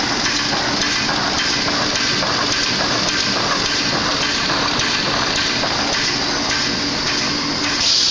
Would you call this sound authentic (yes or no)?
yes